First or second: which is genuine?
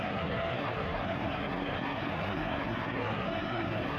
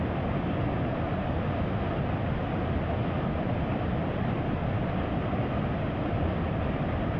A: second